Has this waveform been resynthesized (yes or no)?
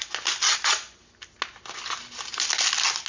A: no